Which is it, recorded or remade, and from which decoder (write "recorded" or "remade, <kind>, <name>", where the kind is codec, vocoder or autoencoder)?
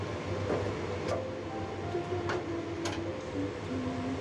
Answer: recorded